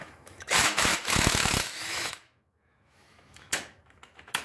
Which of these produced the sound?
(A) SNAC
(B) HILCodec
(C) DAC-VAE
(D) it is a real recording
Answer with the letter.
C